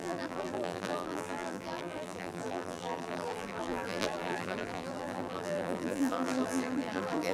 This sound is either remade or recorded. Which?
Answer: remade